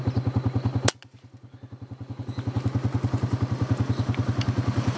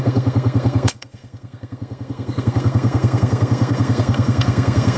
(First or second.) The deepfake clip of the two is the second